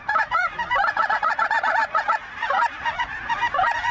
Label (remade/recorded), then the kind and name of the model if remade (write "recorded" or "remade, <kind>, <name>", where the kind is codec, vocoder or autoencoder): remade, vocoder, Vocos